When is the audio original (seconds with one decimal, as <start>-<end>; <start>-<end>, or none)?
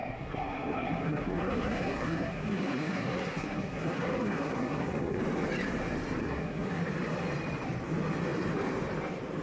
5.2-6.2; 6.8-9.4